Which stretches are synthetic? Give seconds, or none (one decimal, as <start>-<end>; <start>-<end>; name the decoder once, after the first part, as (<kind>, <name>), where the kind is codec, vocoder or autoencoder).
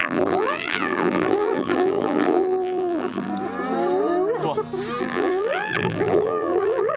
0.0-3.3 (vocoder, BigVGAN v2); 5.0-7.0